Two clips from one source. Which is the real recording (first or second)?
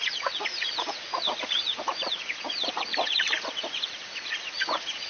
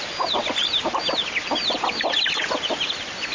second